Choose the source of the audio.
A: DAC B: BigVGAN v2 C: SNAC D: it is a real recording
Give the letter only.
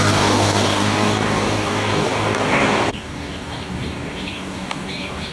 A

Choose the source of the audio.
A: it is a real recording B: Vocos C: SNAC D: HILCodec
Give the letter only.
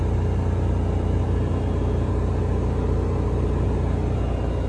A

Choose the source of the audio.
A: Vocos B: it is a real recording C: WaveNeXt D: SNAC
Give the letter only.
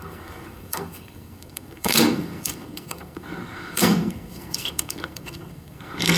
D